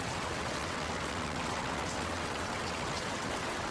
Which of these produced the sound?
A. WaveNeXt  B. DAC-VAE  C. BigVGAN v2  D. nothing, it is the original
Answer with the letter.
A